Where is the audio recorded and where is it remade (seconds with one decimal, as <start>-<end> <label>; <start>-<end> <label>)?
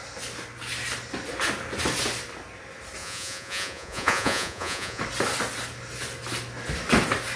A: 0.0-3.0 recorded; 3.0-5.0 remade; 5.0-7.4 recorded